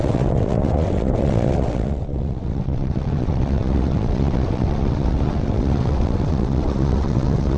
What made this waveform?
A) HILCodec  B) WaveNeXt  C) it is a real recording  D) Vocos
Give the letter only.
B